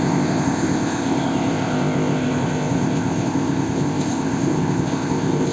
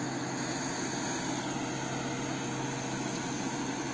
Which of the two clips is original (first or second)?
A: second